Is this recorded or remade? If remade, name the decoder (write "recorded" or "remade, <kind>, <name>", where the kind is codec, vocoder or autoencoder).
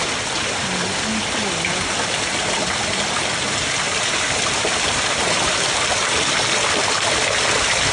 recorded